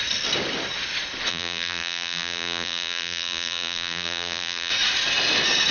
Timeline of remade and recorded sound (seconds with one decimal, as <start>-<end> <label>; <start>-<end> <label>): 0.0-1.3 recorded; 1.3-4.7 remade; 4.7-5.7 recorded